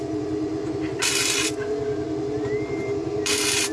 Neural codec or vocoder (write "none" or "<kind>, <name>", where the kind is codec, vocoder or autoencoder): none